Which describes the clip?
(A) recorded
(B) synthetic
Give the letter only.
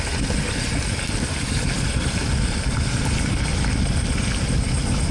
A